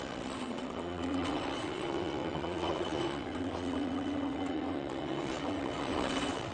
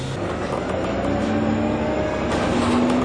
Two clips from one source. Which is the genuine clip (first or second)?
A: second